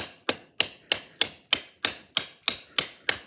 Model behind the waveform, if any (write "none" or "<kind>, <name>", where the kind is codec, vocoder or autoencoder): none